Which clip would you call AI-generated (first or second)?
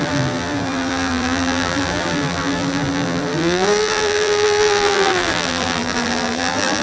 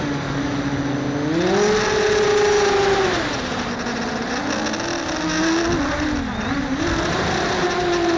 first